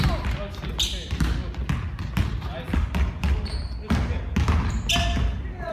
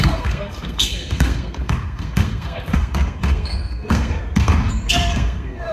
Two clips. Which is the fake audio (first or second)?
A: second